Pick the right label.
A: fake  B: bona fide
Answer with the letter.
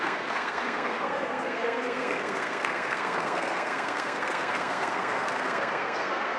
A